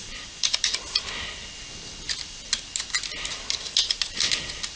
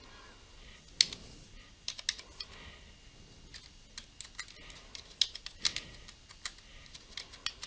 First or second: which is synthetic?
first